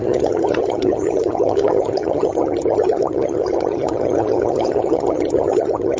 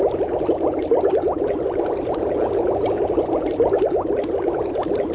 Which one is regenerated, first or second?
first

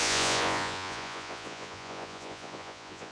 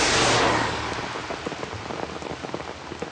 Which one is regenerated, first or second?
first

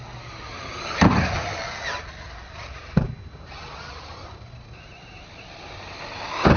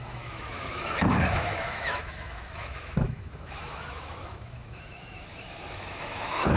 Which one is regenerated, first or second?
second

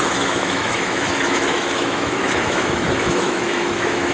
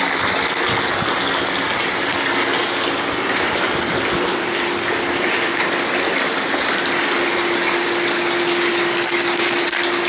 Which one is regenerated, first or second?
first